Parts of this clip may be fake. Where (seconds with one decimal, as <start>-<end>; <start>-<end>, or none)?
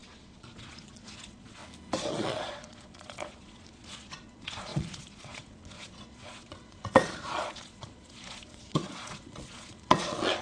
0.0-1.6; 2.1-10.4